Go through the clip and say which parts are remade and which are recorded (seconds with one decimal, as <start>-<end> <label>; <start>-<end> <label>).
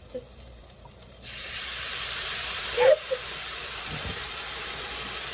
0.0-2.6 remade; 2.6-5.3 recorded